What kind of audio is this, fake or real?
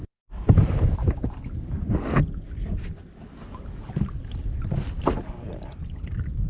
real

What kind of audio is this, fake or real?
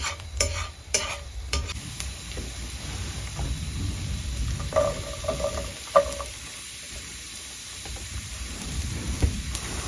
fake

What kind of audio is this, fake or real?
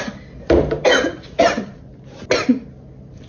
real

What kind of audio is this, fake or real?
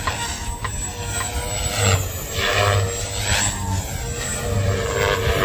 real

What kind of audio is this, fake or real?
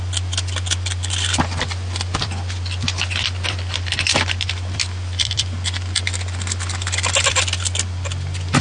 fake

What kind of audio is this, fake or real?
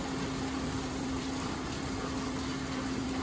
fake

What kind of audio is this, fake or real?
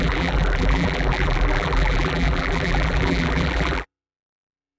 fake